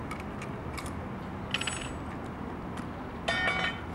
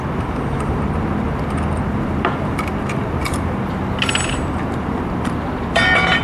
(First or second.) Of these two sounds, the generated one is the second